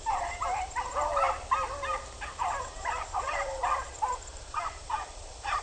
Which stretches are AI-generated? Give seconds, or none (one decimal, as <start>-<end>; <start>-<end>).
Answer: 0.0-0.9; 2.6-3.6; 4.1-5.6